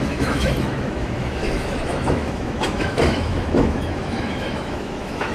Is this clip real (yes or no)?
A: no